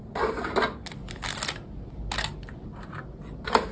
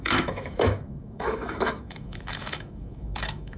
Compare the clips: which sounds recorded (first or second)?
first